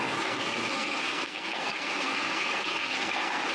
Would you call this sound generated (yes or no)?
yes